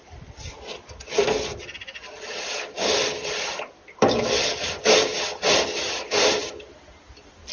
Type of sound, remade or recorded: recorded